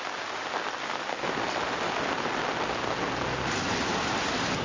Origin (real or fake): real